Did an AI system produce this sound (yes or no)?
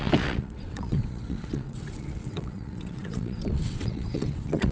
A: yes